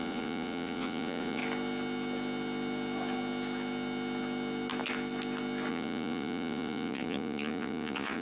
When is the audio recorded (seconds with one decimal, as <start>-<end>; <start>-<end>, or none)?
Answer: 1.4-5.7